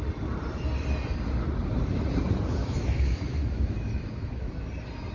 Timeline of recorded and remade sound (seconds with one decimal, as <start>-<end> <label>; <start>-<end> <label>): 0.0-2.6 recorded; 2.6-4.5 remade; 4.5-5.1 recorded